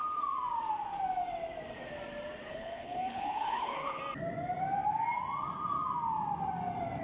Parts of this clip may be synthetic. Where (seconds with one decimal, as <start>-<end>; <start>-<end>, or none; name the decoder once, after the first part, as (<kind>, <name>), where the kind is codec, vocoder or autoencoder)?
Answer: 2.5-4.0 (codec, HILCodec)